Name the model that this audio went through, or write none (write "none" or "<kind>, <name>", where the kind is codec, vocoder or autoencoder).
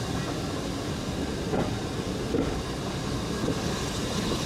none